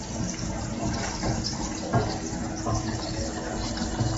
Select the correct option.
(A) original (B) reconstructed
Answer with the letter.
A